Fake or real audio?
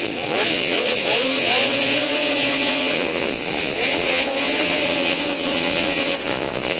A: fake